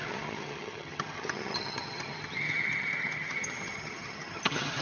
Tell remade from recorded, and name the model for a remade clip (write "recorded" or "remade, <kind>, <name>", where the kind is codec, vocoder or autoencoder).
remade, vocoder, HiFi-GAN